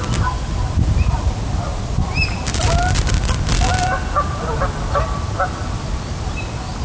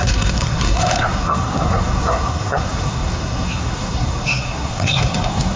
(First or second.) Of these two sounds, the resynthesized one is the second